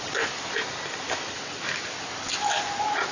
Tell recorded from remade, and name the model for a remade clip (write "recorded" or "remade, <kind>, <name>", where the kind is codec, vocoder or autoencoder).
recorded